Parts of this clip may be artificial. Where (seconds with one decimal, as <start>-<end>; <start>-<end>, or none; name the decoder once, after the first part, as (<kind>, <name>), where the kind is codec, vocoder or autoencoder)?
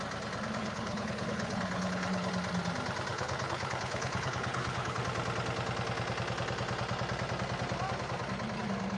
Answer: 0.6-2.3 (codec, HILCodec); 3.1-5.0